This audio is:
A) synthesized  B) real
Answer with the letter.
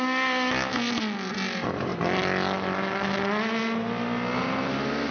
B